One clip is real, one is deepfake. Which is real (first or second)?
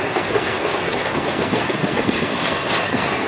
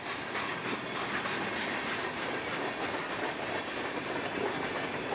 second